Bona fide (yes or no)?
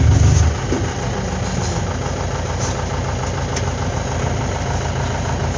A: yes